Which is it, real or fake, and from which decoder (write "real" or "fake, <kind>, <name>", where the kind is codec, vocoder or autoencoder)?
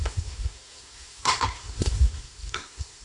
fake, codec, SNAC